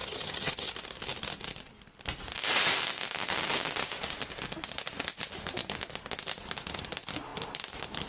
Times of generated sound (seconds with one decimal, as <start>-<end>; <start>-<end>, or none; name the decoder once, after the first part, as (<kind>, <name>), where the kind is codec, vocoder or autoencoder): 0.0-0.7 (vocoder, HiFi-GAN)